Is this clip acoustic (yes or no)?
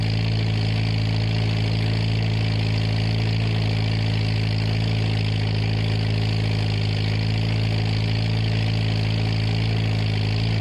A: yes